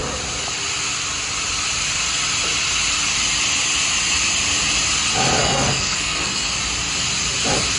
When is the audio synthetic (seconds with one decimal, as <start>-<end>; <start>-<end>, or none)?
5.4-6.6